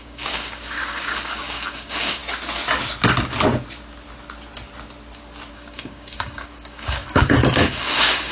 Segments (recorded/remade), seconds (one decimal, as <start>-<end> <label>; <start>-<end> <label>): 0.0-2.2 remade; 2.2-5.5 recorded; 5.5-8.3 remade

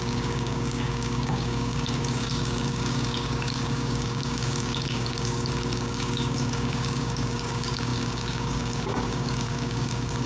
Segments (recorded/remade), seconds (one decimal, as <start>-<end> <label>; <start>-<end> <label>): 0.0-10.3 remade

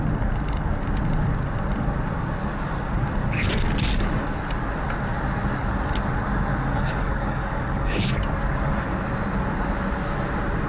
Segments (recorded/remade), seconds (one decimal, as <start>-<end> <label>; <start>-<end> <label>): 0.0-6.5 recorded; 6.5-8.1 remade; 8.1-10.7 recorded

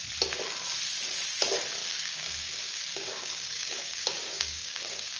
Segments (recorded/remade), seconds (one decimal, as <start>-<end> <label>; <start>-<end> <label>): 0.0-1.8 recorded; 1.8-5.2 remade